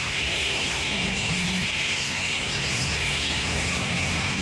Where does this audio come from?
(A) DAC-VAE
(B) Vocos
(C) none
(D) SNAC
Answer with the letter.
D